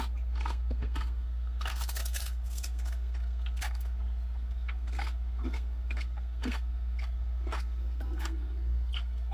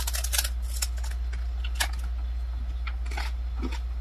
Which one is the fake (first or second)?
first